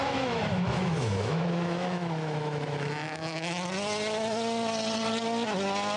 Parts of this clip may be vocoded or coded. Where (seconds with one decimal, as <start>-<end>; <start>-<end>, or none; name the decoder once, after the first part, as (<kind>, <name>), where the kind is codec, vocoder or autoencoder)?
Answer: 0.0-3.6 (autoencoder, DAC-VAE)